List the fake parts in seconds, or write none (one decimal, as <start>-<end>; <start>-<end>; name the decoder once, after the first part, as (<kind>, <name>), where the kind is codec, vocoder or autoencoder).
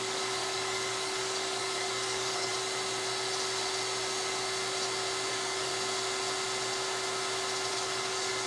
0.0-2.5 (codec, DAC); 5.3-5.7; 7.7-8.5